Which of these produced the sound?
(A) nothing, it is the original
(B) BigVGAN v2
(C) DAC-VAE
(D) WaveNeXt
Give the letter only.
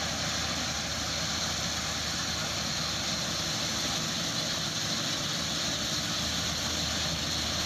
A